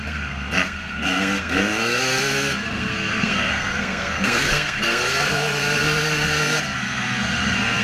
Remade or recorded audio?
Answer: remade